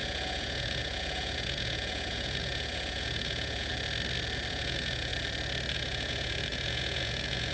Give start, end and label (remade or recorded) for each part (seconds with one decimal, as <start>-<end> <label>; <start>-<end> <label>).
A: 0.0-3.7 remade; 3.7-4.5 recorded; 4.5-5.1 remade; 5.1-5.7 recorded; 5.7-7.5 remade